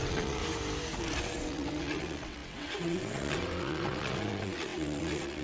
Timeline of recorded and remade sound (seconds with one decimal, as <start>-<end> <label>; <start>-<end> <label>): 0.0-0.4 remade; 0.4-1.2 recorded; 1.2-5.4 remade